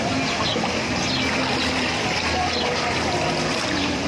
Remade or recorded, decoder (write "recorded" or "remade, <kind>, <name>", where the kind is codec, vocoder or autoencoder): recorded